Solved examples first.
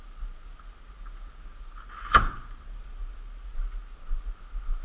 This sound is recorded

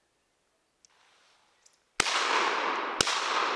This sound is recorded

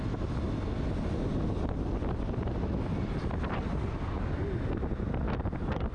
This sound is recorded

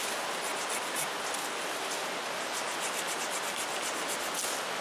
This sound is recorded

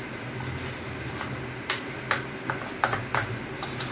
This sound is recorded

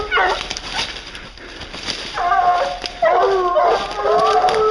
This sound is recorded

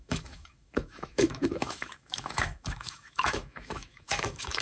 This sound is remade